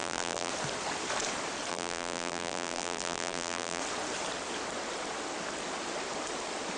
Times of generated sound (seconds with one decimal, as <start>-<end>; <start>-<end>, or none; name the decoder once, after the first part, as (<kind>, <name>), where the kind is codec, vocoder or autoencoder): 0.0-0.5 (vocoder, BigVGAN v2); 1.7-3.8